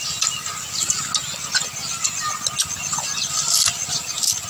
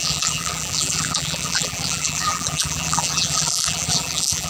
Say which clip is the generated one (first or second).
second